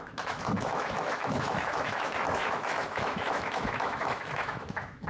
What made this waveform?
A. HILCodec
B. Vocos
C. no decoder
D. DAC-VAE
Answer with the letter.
D